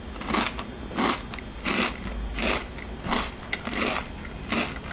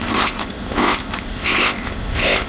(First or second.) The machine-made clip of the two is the second